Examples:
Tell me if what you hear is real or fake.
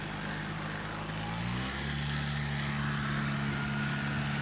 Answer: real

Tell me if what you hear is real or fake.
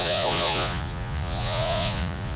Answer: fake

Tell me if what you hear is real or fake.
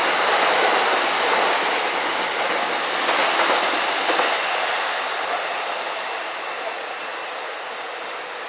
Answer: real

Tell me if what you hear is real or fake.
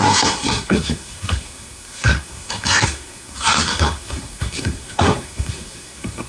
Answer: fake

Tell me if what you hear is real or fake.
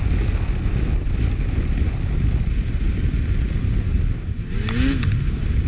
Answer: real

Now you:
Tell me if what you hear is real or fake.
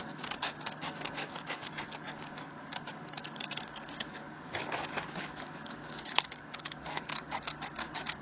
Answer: fake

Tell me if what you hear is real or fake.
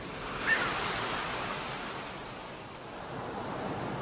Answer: real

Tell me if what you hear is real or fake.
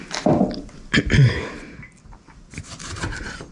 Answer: real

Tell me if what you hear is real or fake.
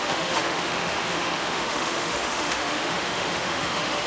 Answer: fake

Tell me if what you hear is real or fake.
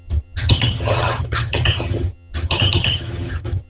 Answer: fake